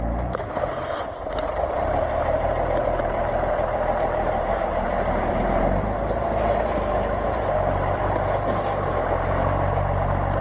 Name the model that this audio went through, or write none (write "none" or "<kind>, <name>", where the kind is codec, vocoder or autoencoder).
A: vocoder, BigVGAN v2